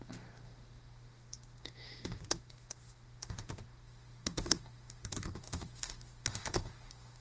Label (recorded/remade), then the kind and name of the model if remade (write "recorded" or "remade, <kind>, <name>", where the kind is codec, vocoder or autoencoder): remade, autoencoder, DAC-VAE